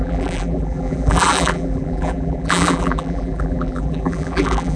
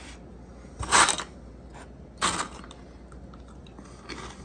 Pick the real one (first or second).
second